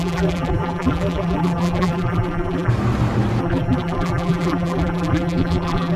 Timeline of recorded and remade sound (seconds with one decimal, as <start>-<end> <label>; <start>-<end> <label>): 0.0-2.7 remade; 2.7-3.4 recorded; 3.4-6.0 remade

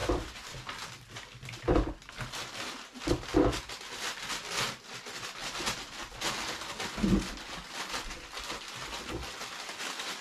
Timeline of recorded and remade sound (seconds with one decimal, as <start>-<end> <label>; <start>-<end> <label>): 0.0-10.2 recorded

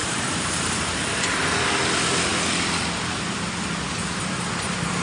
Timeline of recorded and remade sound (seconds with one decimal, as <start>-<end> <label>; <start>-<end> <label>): 0.0-1.5 remade; 1.5-5.0 recorded

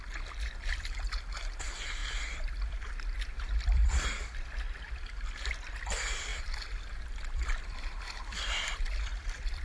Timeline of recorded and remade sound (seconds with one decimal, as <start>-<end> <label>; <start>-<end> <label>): 0.0-3.8 remade; 3.8-4.9 recorded; 4.9-9.6 remade

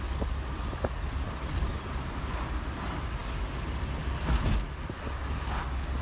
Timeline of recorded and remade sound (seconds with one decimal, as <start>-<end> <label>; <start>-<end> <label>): 0.0-6.0 recorded